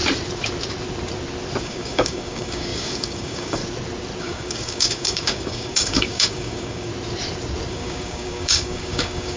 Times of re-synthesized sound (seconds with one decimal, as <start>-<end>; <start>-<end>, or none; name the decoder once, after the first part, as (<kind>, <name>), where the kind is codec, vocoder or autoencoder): 1.6-3.6 (codec, DAC); 4.2-6.9; 7.7-9.4